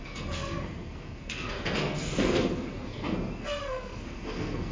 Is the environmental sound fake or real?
fake